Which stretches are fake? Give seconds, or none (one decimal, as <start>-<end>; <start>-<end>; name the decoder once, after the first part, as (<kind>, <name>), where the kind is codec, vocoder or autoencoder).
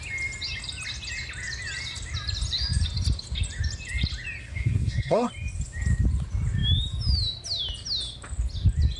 4.4-5.3 (codec, SNAC)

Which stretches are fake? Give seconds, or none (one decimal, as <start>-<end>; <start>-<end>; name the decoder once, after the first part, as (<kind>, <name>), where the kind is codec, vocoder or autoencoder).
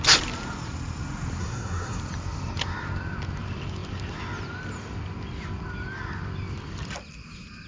1.4-2.0 (codec, SNAC)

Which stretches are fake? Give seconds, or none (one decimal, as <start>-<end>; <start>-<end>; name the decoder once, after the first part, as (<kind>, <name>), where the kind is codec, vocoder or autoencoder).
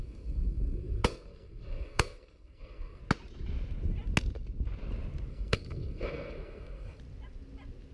0.0-3.0 (codec, SNAC); 5.3-7.0